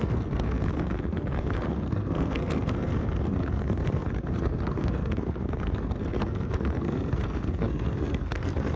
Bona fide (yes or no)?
no